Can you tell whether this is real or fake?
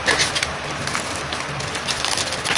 real